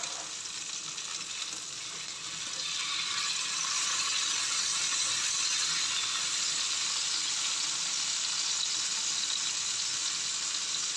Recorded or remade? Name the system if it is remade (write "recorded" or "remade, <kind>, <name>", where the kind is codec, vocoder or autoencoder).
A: recorded